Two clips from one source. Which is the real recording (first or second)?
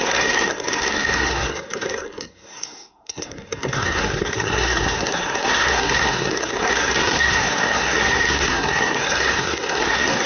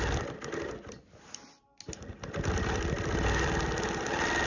second